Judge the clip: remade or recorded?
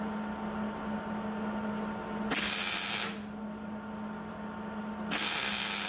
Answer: recorded